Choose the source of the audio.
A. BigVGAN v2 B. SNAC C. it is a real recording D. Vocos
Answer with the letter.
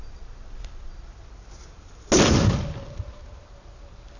C